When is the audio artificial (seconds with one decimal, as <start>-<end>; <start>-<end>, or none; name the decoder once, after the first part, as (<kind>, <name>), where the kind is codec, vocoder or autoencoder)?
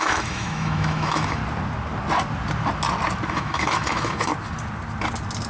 0.0-1.4 (autoencoder, DAC-VAE); 3.3-4.3